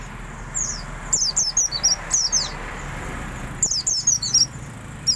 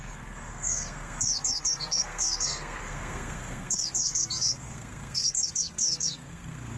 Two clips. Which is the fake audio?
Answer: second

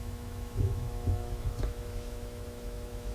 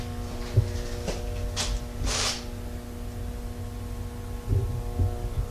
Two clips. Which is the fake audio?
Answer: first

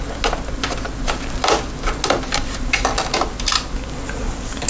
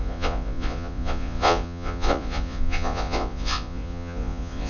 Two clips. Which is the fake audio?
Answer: second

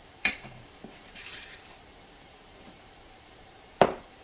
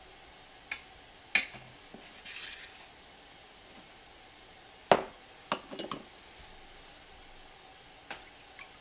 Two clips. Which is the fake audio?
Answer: first